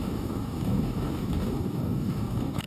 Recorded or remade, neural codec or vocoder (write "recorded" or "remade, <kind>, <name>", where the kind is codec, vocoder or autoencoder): remade, codec, DAC